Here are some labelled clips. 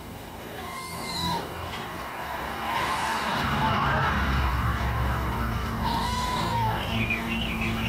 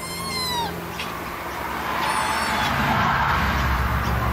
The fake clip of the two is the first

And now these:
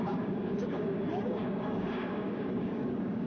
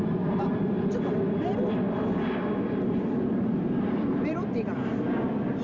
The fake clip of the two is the first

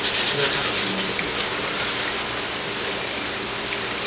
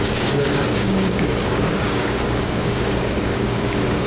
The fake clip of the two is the second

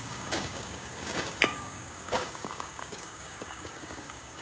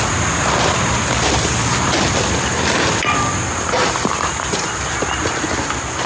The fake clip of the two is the first